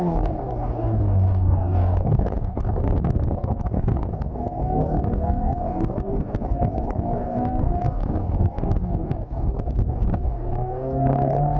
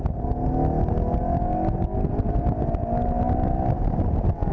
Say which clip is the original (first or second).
second